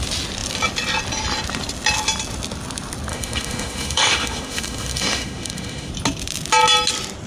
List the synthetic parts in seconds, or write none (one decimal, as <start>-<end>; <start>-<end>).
3.1-5.9